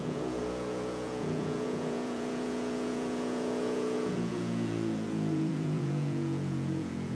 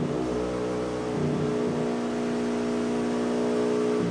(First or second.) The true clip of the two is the second